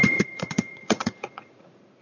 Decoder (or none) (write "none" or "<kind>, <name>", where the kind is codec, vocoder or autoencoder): vocoder, Vocos